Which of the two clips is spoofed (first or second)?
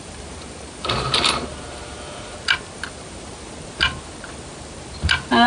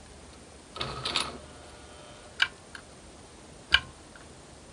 first